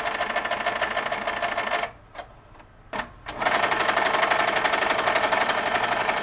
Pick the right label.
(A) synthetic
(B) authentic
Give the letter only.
B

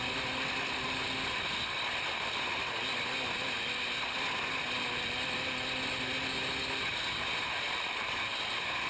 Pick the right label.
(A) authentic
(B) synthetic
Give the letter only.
A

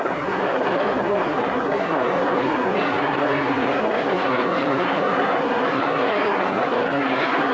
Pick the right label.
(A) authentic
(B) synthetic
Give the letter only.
B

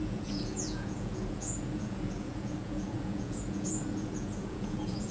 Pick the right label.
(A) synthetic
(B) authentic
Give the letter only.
A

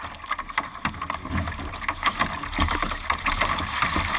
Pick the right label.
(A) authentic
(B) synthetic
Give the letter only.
A